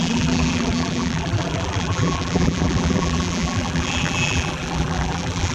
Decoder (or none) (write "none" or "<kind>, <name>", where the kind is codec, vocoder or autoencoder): vocoder, BigVGAN v2